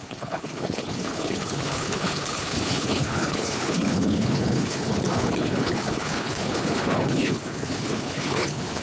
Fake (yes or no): yes